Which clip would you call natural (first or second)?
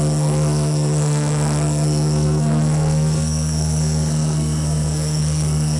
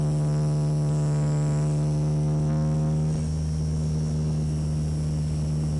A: second